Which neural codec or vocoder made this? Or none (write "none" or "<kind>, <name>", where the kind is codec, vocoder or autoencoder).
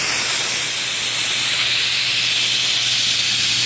none